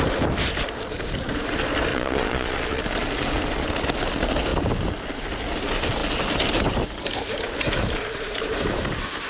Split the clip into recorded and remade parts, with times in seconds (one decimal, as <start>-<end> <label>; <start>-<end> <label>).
0.0-1.9 recorded; 1.9-2.8 remade; 2.8-9.3 recorded